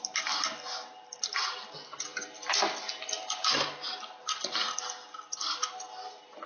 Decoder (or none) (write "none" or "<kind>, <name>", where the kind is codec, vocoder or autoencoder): none